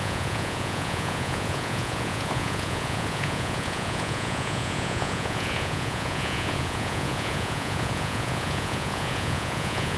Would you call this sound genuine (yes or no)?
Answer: no